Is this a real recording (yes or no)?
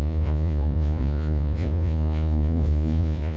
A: no